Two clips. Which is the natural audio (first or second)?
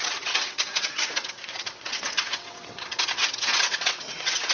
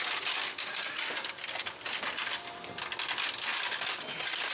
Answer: second